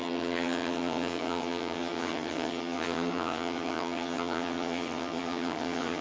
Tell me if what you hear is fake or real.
fake